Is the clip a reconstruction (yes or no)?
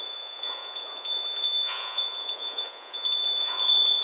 yes